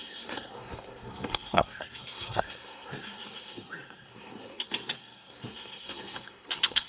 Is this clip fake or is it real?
fake